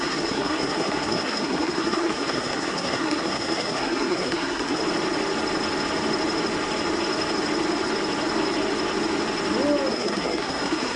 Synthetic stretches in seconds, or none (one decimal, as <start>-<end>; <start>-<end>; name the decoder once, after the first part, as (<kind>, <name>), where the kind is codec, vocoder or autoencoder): 0.0-4.8 (codec, SNAC); 9.9-11.0

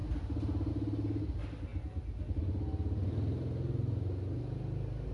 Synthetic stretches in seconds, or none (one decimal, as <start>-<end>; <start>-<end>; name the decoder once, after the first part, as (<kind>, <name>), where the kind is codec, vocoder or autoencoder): none

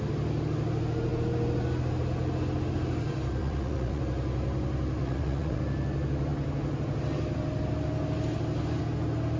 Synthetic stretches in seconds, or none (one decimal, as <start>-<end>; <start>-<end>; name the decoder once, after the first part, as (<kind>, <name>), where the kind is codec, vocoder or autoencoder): 3.4-4.0 (vocoder, Vocos); 5.0-5.6

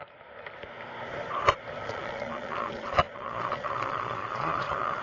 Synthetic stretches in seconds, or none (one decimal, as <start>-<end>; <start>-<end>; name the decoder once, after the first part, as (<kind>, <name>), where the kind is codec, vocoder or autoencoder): 1.8-5.0 (vocoder, Vocos)

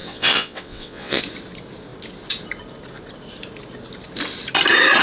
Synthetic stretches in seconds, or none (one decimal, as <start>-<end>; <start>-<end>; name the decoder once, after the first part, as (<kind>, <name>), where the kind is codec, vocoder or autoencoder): 0.0-1.2 (vocoder, WaveNeXt)

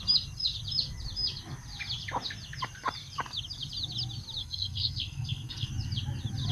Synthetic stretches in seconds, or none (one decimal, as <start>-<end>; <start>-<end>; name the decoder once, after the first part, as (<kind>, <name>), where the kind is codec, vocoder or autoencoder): 4.4-5.7 (codec, SNAC)

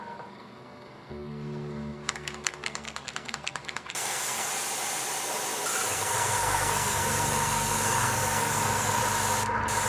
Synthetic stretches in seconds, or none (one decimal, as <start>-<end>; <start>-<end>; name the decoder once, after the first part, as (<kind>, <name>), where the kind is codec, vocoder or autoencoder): 0.0-4.5 (codec, SNAC); 5.9-9.0